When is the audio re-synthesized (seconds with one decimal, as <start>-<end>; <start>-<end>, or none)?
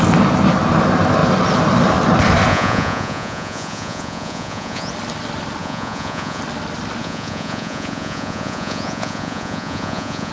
2.5-4.9; 5.6-6.4; 7.0-10.3